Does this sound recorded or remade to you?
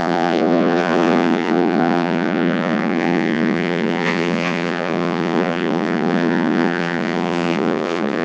remade